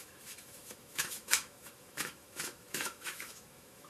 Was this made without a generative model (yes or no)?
no